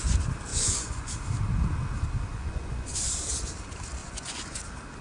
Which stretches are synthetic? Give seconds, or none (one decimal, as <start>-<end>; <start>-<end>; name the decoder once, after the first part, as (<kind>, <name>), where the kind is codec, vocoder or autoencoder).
0.5-1.1 (vocoder, Vocos); 2.3-3.1; 4.0-4.6